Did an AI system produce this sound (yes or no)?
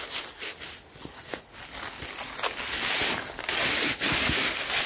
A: no